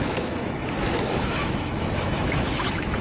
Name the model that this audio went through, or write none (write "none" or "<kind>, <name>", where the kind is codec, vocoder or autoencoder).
autoencoder, DAC-VAE